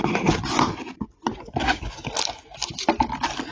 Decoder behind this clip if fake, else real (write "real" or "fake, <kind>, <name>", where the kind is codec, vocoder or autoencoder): real